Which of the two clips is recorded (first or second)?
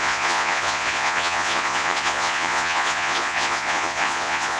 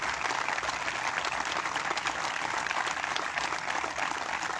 second